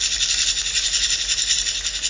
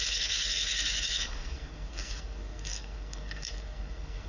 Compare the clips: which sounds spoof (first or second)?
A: second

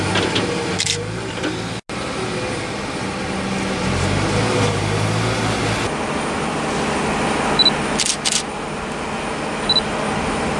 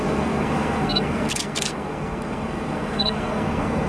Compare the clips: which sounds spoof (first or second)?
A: second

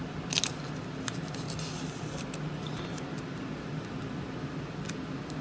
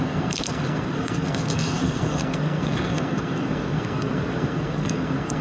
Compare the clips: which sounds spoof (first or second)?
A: second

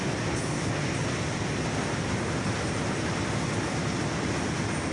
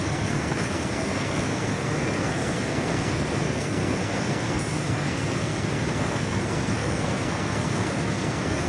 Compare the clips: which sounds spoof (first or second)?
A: second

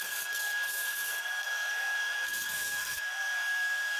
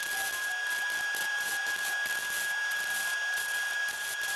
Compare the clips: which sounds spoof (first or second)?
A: first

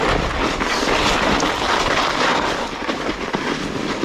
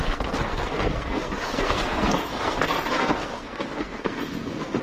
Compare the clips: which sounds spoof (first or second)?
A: second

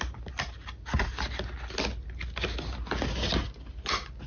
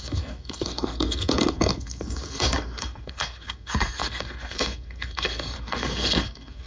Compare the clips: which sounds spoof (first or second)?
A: second